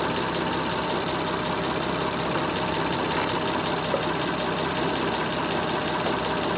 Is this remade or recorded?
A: recorded